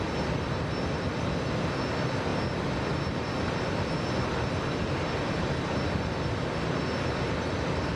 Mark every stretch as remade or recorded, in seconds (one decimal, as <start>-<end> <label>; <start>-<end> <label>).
0.0-8.0 recorded